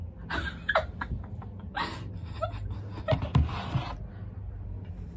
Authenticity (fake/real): real